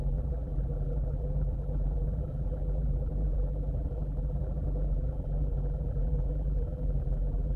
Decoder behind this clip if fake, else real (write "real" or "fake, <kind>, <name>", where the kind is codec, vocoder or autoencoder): fake, vocoder, BigVGAN v2